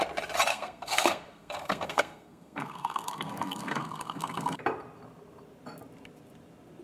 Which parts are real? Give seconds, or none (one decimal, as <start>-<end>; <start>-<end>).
0.0-0.5; 4.6-6.8